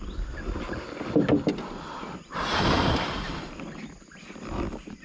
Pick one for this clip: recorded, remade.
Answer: recorded